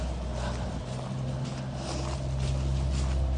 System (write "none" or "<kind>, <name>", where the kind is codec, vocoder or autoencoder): none